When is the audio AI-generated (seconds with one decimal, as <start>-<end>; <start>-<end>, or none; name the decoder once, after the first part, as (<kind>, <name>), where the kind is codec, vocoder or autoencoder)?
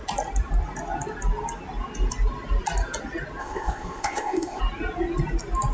3.4-4.6 (codec, ZipCodec)